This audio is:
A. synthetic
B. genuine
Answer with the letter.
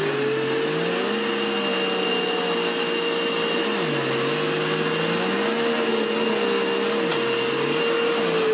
B